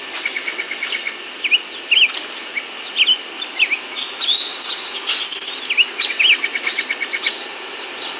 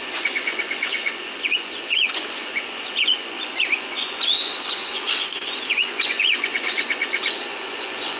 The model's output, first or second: second